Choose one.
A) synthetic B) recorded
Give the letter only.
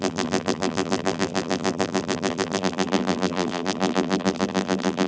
A